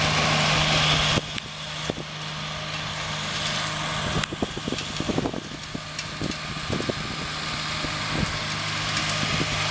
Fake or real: real